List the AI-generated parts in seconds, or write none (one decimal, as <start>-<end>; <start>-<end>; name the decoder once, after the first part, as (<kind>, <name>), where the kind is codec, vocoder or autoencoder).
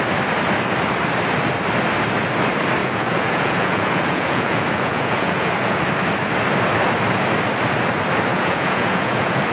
2.8-5.9 (vocoder, Vocos); 8.3-9.5